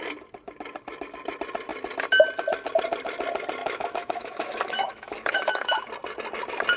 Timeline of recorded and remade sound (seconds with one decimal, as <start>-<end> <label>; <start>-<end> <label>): 0.0-3.6 recorded; 3.6-5.9 remade; 5.9-6.8 recorded